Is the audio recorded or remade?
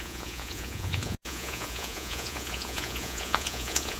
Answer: remade